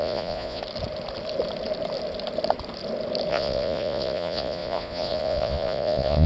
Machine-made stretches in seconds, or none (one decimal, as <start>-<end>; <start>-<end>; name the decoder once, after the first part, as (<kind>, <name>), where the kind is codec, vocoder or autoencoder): 0.0-0.6 (vocoder, Vocos); 3.3-6.3